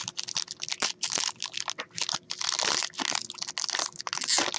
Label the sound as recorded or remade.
recorded